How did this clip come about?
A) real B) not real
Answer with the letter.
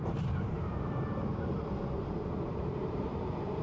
B